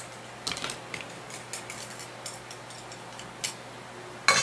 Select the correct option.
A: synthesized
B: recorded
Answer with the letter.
B